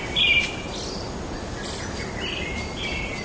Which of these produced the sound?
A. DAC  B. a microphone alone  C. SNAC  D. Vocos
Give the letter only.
B